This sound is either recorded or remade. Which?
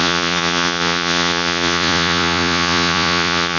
remade